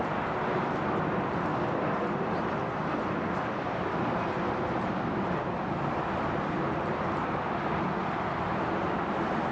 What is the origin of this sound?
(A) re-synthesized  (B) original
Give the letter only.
B